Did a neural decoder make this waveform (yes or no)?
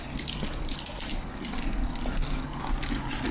no